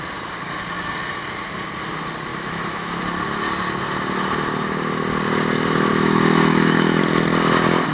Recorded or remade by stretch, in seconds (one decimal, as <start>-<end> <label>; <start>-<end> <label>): 0.0-2.3 recorded; 2.3-3.0 remade; 3.0-5.9 recorded; 5.9-7.0 remade; 7.0-7.9 recorded